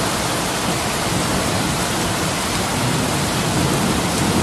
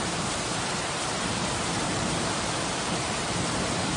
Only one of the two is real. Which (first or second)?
first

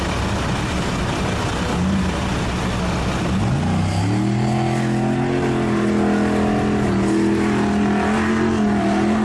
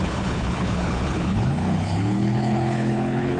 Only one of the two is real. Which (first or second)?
first